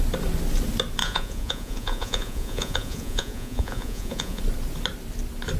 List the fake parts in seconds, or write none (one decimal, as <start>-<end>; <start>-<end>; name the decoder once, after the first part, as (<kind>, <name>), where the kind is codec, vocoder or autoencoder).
1.0-4.4 (vocoder, Vocos)